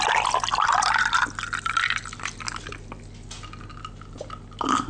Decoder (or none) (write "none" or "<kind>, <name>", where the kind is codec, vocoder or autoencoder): none